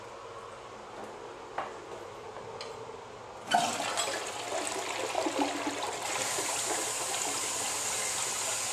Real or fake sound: real